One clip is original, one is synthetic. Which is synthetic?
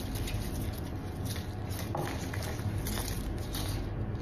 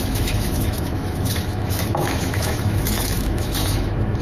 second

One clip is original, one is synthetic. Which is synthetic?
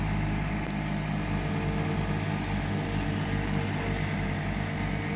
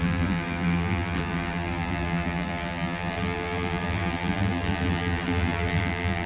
second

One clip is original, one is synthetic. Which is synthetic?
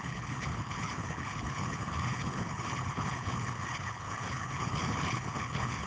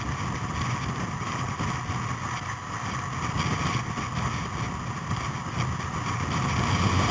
first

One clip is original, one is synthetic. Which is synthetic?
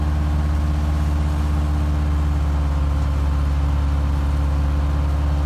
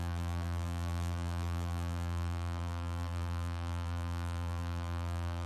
second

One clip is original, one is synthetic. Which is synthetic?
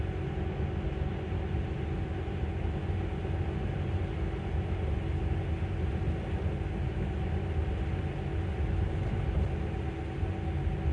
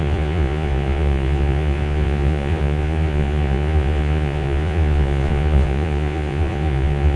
second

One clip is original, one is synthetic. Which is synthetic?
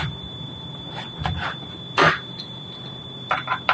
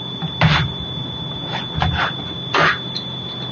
first